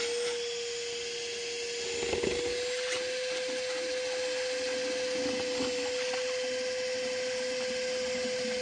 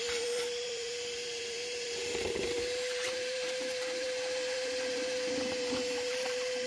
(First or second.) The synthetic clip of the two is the second